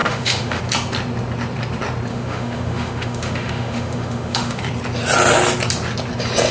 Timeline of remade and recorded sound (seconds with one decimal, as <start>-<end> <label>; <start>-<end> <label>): 0.0-0.6 remade; 0.6-2.1 recorded; 2.1-4.6 remade; 4.6-6.5 recorded